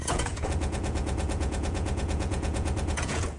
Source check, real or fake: fake